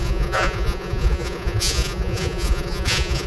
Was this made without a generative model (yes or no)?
no